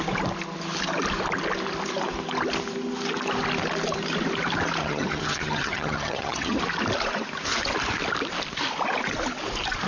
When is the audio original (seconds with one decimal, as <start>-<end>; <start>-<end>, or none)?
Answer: 0.0-4.8; 6.6-9.9